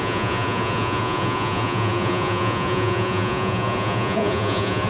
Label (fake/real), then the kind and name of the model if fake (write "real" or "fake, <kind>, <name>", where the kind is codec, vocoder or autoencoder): fake, vocoder, Vocos